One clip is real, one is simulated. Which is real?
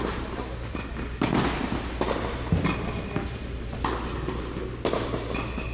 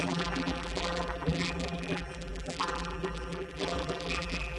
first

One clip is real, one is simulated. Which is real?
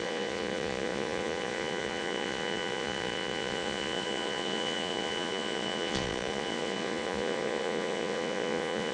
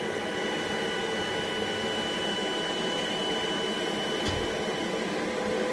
second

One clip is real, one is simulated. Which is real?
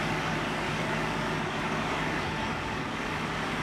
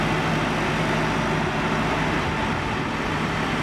second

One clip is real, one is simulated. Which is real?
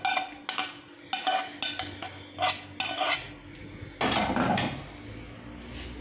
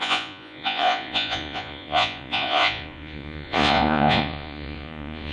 first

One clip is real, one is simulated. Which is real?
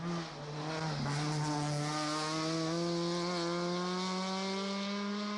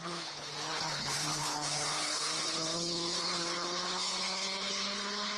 first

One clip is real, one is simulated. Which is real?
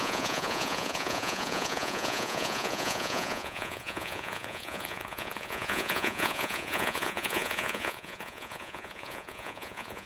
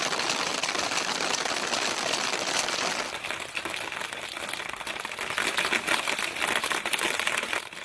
second